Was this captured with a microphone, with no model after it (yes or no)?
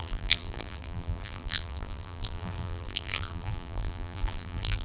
no